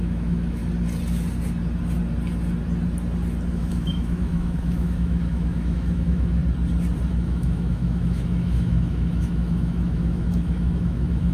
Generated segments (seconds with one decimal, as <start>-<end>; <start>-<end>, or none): 0.0-0.6; 3.5-6.4; 7.1-11.3